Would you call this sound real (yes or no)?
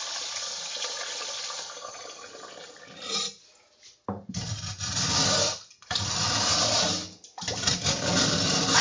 yes